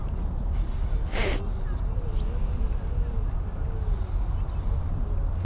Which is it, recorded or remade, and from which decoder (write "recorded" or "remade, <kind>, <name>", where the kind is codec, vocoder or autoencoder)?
recorded